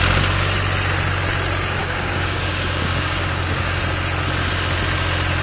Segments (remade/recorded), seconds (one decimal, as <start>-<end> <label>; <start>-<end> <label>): 0.0-1.8 recorded; 1.8-3.8 remade; 3.8-5.4 recorded